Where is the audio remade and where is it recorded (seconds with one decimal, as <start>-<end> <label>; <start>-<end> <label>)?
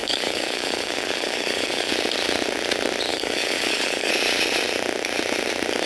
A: 0.0-1.9 remade; 1.9-3.1 recorded; 3.1-4.1 remade; 4.1-5.9 recorded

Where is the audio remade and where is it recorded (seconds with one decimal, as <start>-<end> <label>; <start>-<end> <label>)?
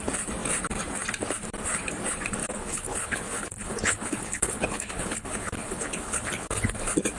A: 0.0-2.4 recorded; 2.4-6.7 remade; 6.7-7.2 recorded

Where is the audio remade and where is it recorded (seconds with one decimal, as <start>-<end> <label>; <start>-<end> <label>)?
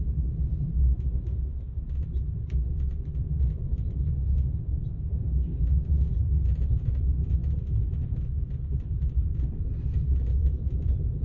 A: 0.0-11.2 remade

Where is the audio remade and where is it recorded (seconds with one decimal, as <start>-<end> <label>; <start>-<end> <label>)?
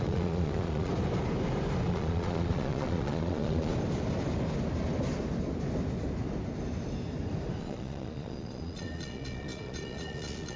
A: 0.0-0.9 remade; 0.9-1.9 recorded; 1.9-3.7 remade; 3.7-7.6 recorded; 7.6-10.6 remade